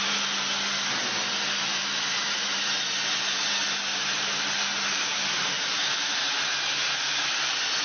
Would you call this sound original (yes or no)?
yes